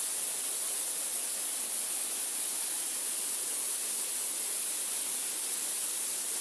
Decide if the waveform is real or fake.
real